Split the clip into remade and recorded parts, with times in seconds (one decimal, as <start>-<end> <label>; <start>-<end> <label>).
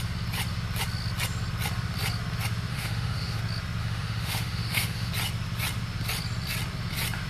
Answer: 0.0-2.7 recorded; 2.7-3.4 remade; 3.4-3.8 recorded; 3.8-5.1 remade; 5.1-7.3 recorded